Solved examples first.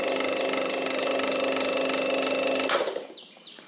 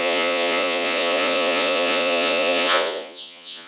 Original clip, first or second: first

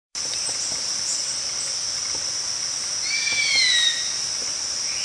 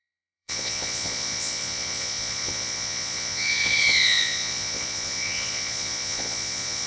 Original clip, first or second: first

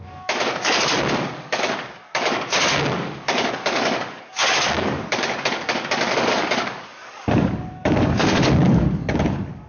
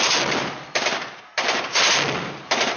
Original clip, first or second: second